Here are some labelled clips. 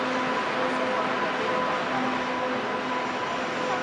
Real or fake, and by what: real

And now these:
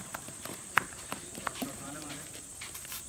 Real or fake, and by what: fake, vocoder, BigVGAN v2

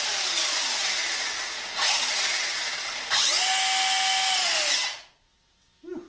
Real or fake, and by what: real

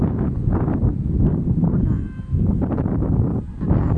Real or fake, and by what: real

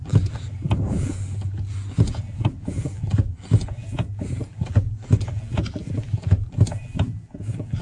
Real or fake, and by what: fake, vocoder, BigVGAN v2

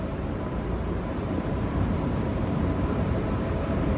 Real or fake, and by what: fake, vocoder, BigVGAN v2